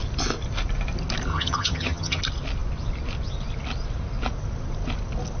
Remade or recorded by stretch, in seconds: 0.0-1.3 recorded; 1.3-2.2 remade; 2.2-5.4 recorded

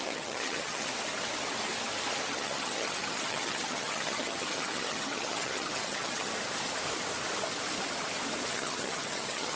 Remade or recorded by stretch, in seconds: 0.0-0.9 remade; 0.9-2.3 recorded; 2.3-6.3 remade; 6.3-8.5 recorded; 8.5-9.6 remade

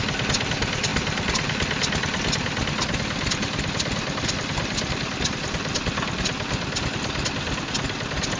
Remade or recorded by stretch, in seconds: 0.0-8.4 recorded

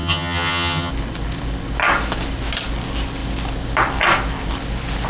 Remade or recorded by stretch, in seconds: 0.0-0.9 remade; 0.9-5.1 recorded